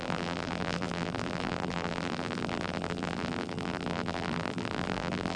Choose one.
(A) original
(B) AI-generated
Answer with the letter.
B